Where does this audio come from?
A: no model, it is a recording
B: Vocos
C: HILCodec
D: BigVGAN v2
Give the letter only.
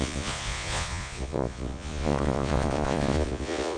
B